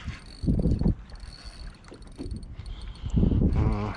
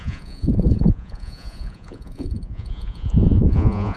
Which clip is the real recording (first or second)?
first